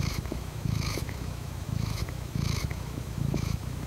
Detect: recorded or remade remade